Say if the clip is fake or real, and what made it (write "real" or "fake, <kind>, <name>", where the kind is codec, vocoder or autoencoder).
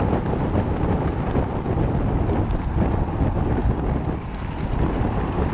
real